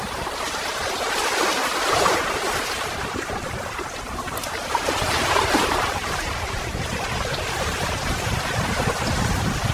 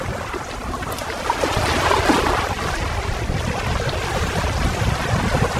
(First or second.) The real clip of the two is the second